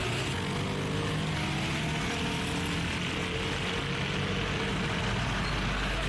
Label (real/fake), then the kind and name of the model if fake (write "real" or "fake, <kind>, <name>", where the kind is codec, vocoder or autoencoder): real